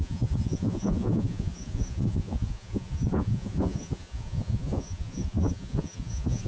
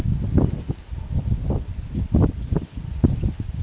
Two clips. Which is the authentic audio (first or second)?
second